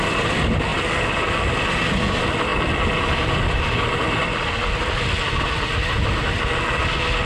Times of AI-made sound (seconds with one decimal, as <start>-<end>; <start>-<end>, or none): 0.7-1.6